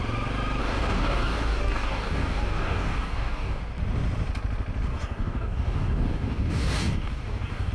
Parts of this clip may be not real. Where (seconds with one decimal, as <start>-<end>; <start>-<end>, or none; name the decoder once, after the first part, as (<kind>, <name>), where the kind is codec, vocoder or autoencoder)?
0.6-3.6 (codec, DAC); 4.9-7.7